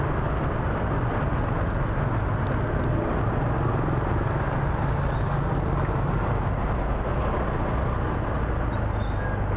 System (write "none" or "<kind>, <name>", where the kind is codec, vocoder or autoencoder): none